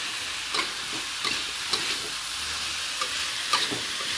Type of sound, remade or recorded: recorded